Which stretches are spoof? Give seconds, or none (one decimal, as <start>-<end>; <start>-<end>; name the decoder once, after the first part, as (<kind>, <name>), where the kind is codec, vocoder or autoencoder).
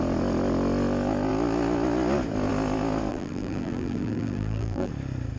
3.1-4.9 (vocoder, BigVGAN v2)